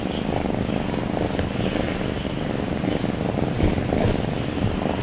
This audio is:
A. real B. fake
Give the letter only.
A